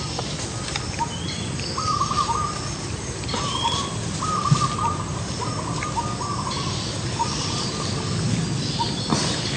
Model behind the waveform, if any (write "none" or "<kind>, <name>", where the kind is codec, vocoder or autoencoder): none